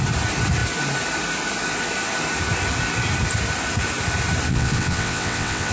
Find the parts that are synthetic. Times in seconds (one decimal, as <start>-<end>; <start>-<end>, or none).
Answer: 4.5-5.7